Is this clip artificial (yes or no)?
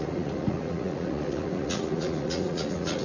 yes